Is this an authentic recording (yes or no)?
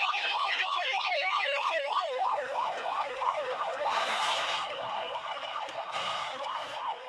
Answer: no